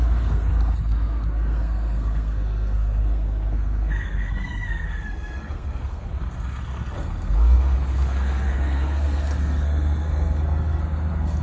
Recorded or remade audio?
remade